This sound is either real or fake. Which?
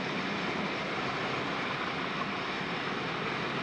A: real